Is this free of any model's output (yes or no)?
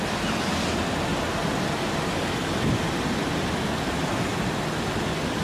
yes